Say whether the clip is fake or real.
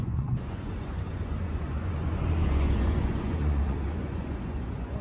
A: fake